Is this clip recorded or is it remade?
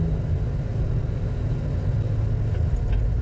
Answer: recorded